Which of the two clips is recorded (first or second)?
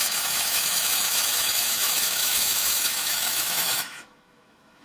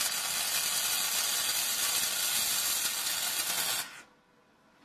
second